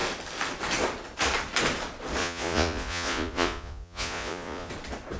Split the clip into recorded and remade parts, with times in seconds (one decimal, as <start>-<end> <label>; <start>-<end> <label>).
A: 0.0-2.2 recorded; 2.2-4.7 remade; 4.7-5.2 recorded